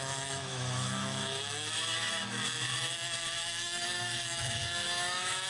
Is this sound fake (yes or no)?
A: yes